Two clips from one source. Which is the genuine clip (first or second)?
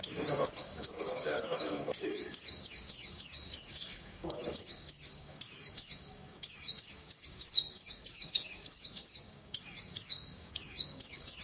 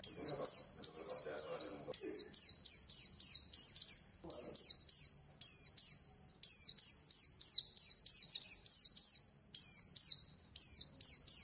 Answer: second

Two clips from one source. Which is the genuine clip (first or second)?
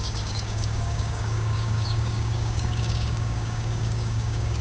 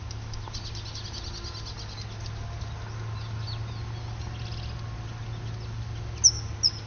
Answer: second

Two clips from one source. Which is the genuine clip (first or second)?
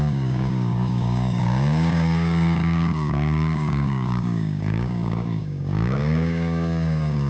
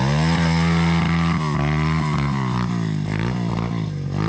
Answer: second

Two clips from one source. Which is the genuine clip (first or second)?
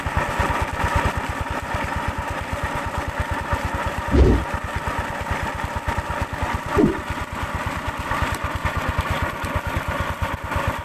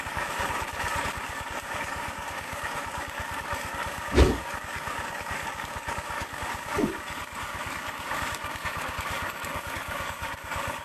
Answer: first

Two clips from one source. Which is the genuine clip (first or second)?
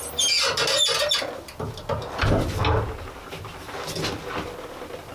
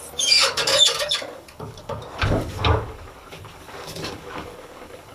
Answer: first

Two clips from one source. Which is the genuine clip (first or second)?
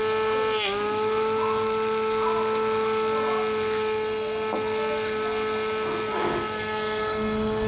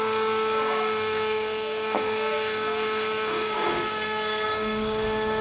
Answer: first